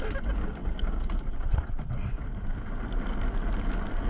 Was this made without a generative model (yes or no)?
yes